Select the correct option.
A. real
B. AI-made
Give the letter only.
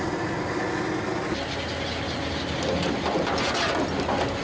A